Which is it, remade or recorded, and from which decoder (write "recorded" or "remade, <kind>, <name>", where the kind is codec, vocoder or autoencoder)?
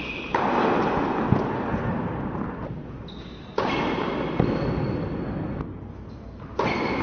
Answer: recorded